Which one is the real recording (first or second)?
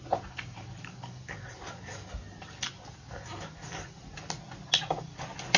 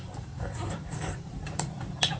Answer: first